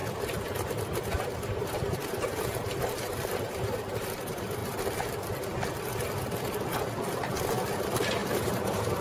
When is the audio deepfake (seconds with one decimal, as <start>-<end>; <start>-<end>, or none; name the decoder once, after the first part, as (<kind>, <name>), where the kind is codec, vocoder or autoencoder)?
1.4-4.6 (vocoder, BigVGAN v2); 7.8-9.0